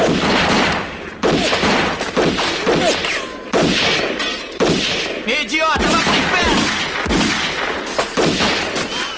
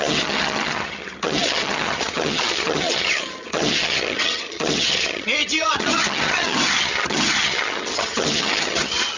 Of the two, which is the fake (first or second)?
second